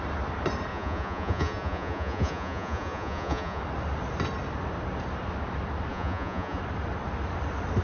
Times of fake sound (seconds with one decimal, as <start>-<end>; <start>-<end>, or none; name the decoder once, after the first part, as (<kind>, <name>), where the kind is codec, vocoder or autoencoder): 0.7-3.6 (vocoder, Vocos); 5.9-6.6